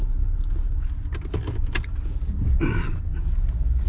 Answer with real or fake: real